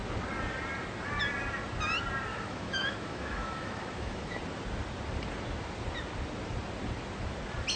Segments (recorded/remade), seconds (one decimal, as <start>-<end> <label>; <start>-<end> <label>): 0.0-2.3 recorded; 2.3-4.4 remade; 4.4-7.8 recorded